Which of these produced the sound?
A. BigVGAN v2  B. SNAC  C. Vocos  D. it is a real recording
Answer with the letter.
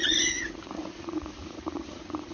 C